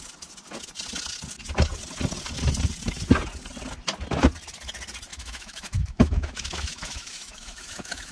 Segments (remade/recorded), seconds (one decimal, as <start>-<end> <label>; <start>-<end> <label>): 0.0-5.1 recorded; 5.1-8.1 remade